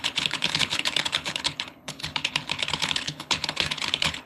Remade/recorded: remade